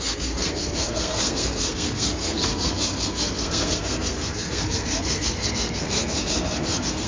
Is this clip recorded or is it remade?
remade